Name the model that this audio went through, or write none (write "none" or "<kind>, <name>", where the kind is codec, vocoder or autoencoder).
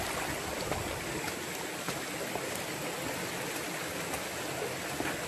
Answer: none